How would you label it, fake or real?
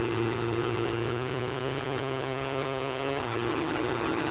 fake